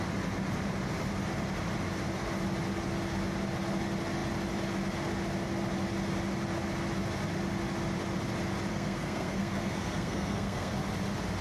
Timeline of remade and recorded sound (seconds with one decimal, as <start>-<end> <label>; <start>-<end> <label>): 0.0-8.7 recorded; 8.7-10.7 remade; 10.7-11.4 recorded